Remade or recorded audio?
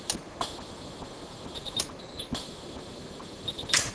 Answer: recorded